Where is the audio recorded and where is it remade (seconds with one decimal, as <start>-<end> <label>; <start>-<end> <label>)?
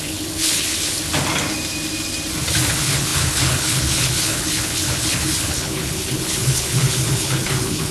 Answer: 0.0-1.0 remade; 1.0-2.7 recorded; 2.7-7.9 remade